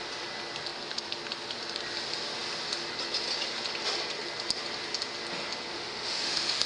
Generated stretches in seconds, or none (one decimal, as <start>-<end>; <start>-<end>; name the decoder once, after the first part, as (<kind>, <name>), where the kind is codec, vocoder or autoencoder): 5.7-6.7 (autoencoder, DAC-VAE)